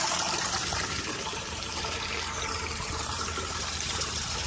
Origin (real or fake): fake